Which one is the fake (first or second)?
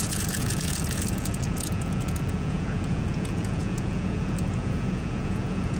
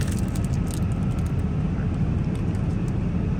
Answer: first